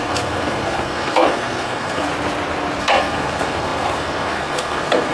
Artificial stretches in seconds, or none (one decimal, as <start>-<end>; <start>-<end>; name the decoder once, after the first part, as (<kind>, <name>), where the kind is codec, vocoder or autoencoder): 0.0-2.1 (codec, SNAC); 2.8-5.1